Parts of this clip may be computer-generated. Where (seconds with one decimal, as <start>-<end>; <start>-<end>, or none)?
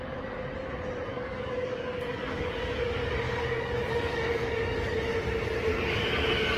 1.1-5.1; 5.7-6.6